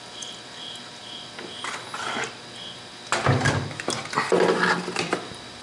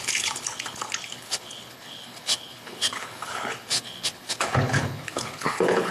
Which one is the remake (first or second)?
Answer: second